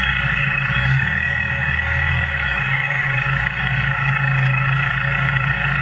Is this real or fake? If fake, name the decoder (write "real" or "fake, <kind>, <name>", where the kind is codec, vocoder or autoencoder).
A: fake, codec, DAC